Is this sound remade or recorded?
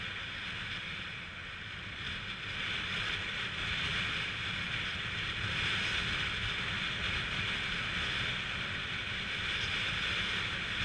recorded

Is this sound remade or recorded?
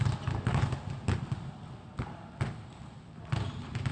recorded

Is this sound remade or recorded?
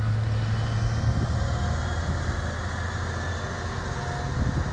recorded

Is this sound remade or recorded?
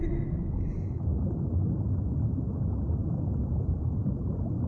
recorded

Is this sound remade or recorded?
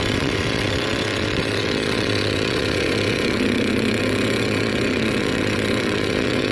remade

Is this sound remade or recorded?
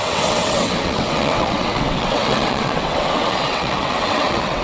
remade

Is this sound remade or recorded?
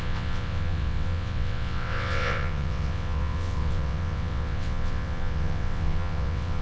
remade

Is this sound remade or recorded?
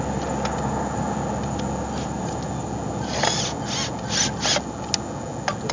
recorded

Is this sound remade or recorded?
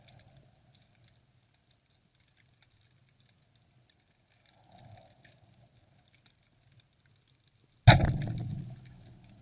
recorded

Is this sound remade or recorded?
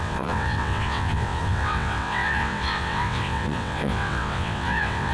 remade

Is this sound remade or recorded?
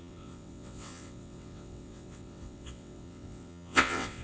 remade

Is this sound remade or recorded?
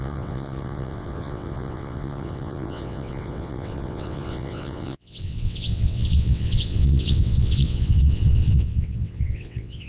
remade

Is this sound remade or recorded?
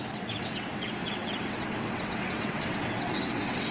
remade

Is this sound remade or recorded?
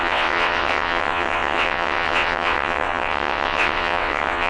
remade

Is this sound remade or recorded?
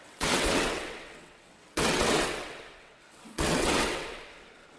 remade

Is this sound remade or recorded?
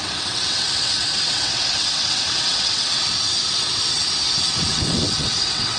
remade